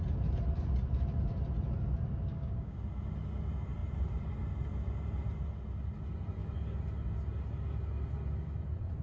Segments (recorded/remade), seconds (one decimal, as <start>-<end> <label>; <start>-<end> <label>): 0.0-2.3 recorded; 2.3-2.8 remade; 2.8-9.0 recorded